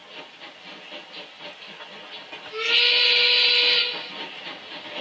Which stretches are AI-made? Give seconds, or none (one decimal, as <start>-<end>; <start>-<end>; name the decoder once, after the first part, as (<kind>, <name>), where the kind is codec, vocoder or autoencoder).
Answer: none